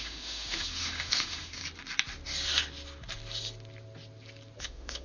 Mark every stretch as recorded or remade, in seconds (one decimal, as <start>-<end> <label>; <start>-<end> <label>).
0.0-1.6 remade; 1.6-4.6 recorded; 4.6-5.0 remade